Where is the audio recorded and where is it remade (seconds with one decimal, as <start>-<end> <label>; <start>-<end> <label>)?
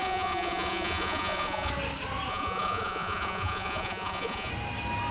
0.0-1.7 remade; 1.7-2.3 recorded; 2.3-4.5 remade; 4.5-5.1 recorded